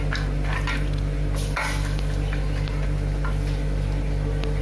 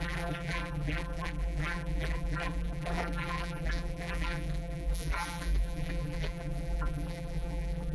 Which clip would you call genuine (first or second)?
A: first